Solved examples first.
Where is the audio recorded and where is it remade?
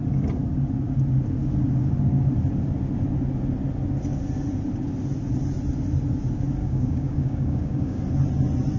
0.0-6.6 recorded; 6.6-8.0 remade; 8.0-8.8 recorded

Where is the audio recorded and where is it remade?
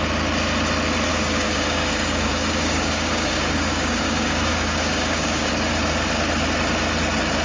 0.0-1.1 recorded; 1.1-5.5 remade; 5.5-7.4 recorded